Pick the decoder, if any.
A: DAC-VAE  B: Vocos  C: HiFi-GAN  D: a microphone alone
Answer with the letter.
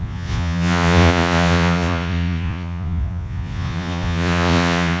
B